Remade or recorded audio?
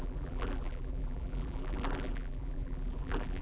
remade